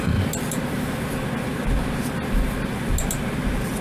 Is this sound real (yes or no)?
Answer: yes